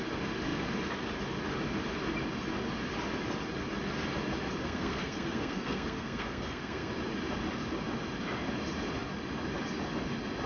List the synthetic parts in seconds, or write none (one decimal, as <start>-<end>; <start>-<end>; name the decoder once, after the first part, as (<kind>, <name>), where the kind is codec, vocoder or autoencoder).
4.6-6.9 (codec, SNAC)